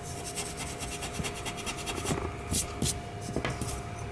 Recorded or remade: recorded